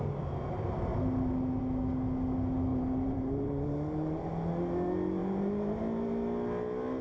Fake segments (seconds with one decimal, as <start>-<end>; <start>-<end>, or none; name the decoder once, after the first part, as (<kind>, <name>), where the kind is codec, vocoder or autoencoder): 2.7-4.3 (vocoder, BigVGAN v2); 5.2-5.8